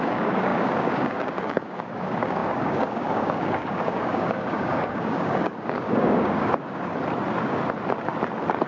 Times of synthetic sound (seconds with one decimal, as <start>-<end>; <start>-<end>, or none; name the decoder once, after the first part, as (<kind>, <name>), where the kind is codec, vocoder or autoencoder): 0.0-6.9 (codec, DAC)